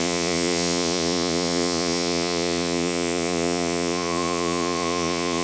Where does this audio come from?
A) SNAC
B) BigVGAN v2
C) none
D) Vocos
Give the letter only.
D